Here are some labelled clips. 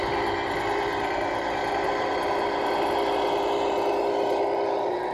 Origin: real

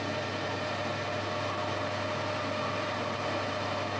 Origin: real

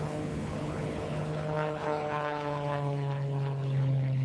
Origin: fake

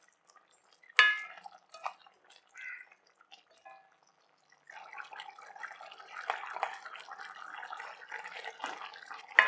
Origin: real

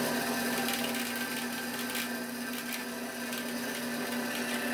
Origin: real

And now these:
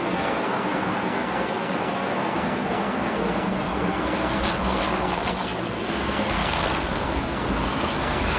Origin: fake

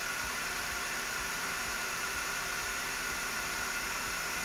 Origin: fake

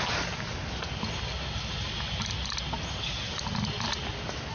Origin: real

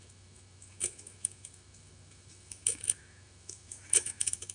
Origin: fake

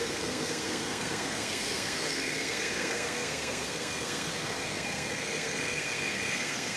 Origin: fake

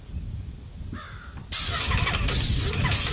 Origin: real